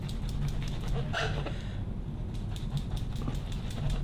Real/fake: real